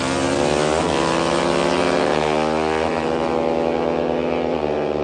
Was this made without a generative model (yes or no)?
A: yes